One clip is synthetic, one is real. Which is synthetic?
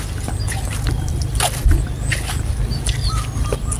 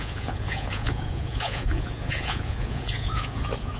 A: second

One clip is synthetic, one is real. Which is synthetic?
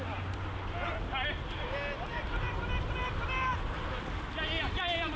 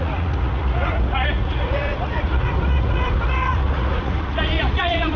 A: second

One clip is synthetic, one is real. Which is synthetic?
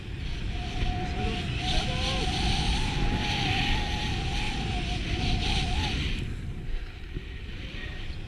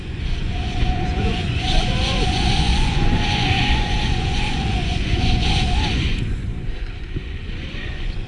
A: second